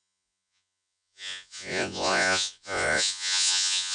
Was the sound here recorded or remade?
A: remade